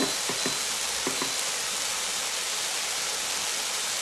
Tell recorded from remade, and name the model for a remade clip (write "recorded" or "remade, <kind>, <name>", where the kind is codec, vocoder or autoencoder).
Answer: recorded